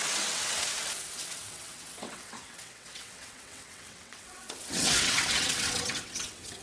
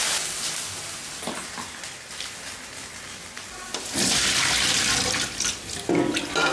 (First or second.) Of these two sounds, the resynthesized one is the first